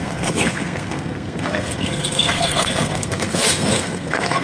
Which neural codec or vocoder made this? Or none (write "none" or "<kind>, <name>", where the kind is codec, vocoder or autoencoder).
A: codec, SNAC